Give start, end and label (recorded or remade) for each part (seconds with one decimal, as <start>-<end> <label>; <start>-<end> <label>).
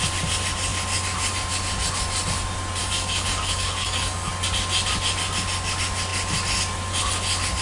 0.0-2.8 recorded; 2.8-4.3 remade; 4.3-7.6 recorded